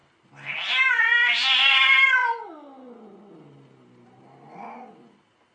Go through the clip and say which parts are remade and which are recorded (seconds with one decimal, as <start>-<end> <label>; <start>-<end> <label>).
0.0-5.5 recorded